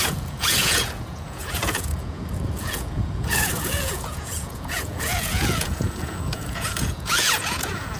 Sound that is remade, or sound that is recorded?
remade